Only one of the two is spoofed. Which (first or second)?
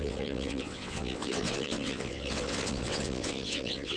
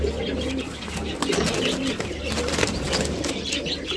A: first